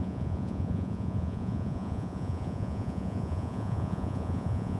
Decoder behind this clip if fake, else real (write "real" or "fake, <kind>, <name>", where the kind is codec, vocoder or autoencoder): fake, vocoder, Vocos